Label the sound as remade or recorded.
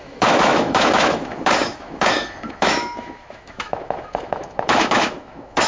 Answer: remade